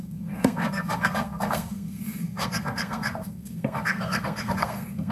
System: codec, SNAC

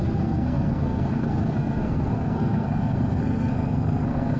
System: codec, SNAC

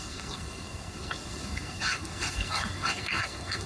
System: codec, SNAC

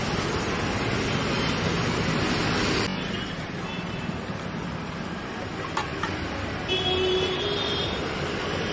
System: none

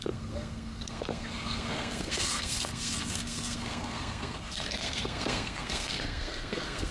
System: codec, SNAC